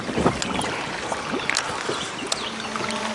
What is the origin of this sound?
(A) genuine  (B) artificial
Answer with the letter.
A